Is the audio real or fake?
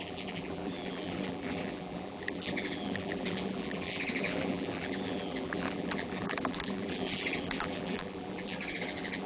fake